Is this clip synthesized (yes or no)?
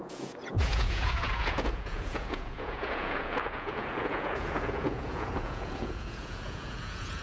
yes